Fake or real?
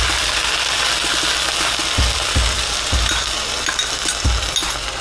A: real